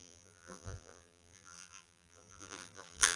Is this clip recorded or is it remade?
remade